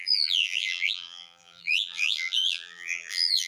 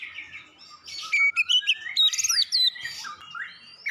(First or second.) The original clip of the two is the second